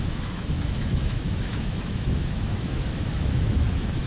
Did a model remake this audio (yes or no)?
yes